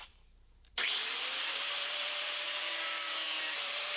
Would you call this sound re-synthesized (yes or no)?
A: yes